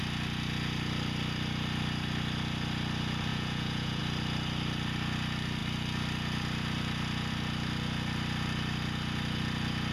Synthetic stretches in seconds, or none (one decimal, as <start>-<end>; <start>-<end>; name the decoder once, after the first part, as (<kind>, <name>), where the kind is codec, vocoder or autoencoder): 3.3-4.0 (vocoder, Vocos)

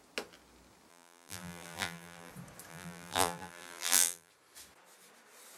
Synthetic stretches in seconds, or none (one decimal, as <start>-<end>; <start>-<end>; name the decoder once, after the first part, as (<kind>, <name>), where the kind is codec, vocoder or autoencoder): 0.9-2.3 (vocoder, BigVGAN v2); 2.7-4.3

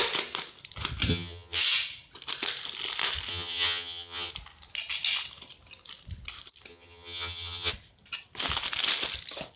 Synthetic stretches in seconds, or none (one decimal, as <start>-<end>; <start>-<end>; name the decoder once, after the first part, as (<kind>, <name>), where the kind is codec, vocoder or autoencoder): 1.1-1.6 (vocoder, HiFi-GAN); 3.3-4.3; 6.7-7.7

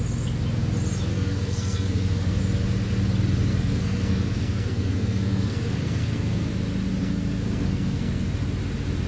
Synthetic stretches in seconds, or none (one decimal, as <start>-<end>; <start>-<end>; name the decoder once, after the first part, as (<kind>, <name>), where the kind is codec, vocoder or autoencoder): 1.1-2.4 (codec, SNAC); 3.5-6.5; 7.0-8.3

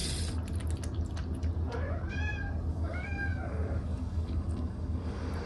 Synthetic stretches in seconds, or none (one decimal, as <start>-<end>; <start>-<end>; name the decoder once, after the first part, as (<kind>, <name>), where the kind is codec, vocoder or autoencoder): 2.7-5.5 (codec, DAC)

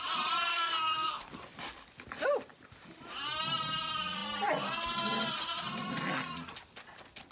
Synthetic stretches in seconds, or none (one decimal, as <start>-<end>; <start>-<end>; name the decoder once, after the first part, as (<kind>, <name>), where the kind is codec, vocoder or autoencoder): 0.5-1.3 (codec, SNAC)

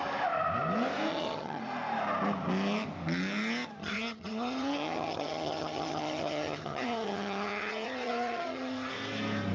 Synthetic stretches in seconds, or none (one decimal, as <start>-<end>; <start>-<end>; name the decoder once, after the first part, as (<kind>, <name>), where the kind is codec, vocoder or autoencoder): 1.1-1.6 (vocoder, HiFi-GAN); 3.8-8.9